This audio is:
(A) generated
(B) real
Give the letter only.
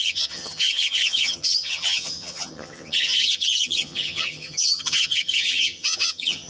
A